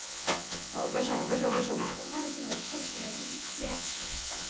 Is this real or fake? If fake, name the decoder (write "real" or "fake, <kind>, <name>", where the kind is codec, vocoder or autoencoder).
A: fake, vocoder, WaveNeXt